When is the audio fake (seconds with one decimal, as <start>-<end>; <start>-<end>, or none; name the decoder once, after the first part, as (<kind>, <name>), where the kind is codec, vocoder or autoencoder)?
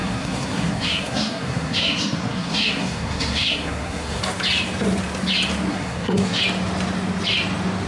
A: 0.0-4.2 (codec, SNAC); 5.7-6.4